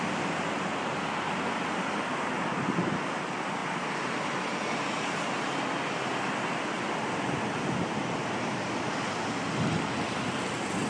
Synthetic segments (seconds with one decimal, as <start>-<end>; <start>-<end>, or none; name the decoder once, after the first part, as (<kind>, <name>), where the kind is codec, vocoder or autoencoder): none